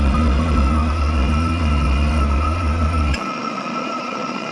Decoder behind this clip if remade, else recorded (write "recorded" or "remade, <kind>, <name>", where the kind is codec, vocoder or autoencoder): remade, vocoder, Vocos